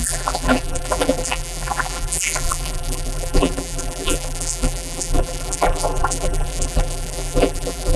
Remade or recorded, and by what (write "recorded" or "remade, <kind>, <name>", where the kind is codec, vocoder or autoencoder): remade, vocoder, BigVGAN v2